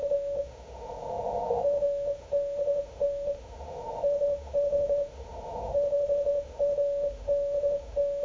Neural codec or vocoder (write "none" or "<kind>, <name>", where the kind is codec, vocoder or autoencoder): autoencoder, DAC-VAE